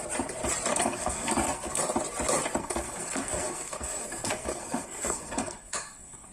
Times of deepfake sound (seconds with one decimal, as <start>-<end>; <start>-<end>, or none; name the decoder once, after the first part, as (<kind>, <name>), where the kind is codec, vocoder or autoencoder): 0.7-1.8 (codec, SNAC); 2.6-6.3